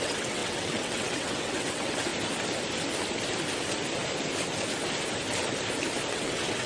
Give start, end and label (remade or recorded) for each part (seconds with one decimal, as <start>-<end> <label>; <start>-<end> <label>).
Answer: 0.0-2.1 remade; 2.1-6.1 recorded; 6.1-6.7 remade